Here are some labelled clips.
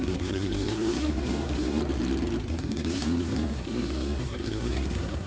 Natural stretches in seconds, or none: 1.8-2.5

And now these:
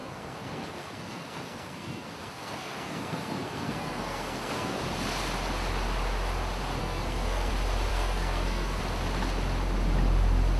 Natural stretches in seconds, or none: 4.8-6.8; 7.5-7.9; 8.8-10.6

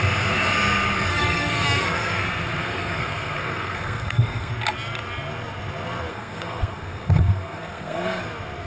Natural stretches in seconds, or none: 0.0-1.1; 2.2-2.6; 4.5-6.1; 8.2-8.7

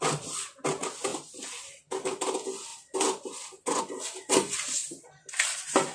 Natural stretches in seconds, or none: 0.0-5.9

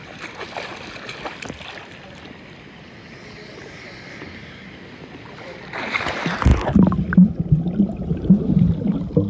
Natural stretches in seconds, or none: 0.0-9.3

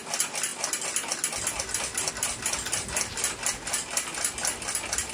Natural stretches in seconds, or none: 0.0-5.1

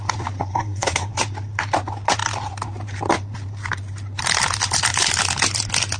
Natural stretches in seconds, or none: 0.0-0.5; 1.1-6.0